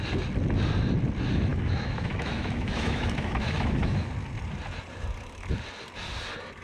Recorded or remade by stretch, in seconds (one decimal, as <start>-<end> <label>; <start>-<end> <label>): 0.0-1.5 recorded; 1.5-4.1 remade; 4.1-6.6 recorded